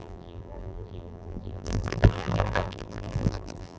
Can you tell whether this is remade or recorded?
remade